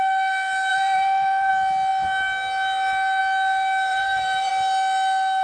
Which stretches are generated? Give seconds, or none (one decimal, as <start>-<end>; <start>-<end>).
0.7-1.5; 3.9-4.5